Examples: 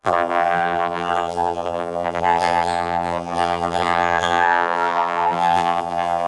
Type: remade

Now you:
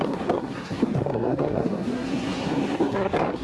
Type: remade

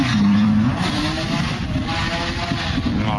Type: recorded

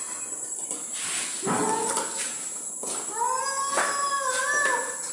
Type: recorded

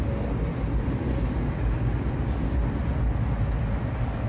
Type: recorded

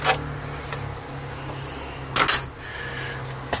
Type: recorded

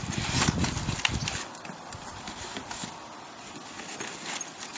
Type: recorded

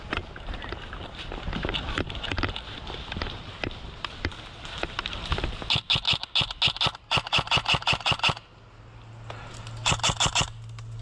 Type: recorded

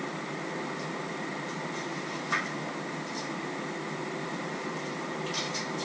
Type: recorded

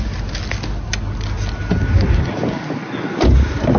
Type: recorded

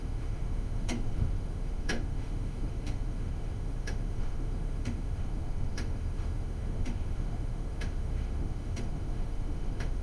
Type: remade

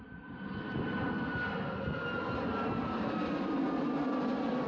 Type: recorded